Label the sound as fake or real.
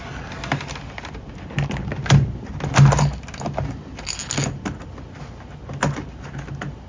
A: real